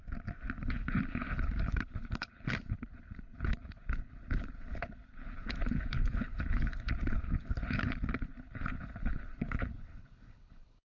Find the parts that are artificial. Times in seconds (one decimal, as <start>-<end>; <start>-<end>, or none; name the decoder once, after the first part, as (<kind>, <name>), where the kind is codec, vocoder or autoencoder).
0.6-10.9 (codec, HILCodec)

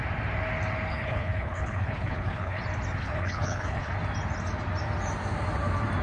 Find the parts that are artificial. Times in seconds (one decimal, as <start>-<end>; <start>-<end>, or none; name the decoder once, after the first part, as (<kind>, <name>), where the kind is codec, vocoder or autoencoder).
0.9-2.6 (codec, HILCodec); 3.0-3.9

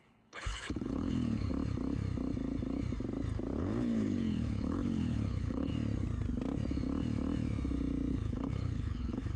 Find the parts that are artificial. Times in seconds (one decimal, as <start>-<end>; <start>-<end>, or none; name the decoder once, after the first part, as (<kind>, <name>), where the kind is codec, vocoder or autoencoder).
0.0-1.5 (codec, HILCodec); 3.6-5.7; 8.1-9.4

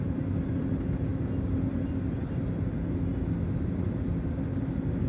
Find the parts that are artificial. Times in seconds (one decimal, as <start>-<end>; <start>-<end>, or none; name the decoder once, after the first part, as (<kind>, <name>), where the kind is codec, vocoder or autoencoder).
none

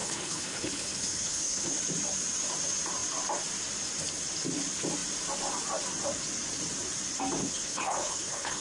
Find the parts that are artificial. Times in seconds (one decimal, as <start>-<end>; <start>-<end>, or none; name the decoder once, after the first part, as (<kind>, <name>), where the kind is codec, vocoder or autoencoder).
0.0-1.7 (codec, HILCodec); 7.4-8.6

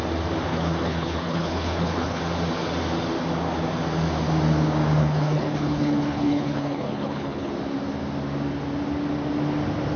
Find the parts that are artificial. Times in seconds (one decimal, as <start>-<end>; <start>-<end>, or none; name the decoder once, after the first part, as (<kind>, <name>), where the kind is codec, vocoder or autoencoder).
0.5-2.2 (codec, HILCodec); 5.0-7.5

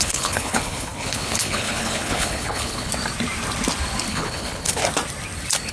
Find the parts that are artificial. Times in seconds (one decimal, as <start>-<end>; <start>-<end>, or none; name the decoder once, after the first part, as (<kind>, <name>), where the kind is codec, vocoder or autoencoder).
0.0-2.9 (codec, HILCodec); 4.1-4.8